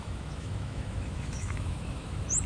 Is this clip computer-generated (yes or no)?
yes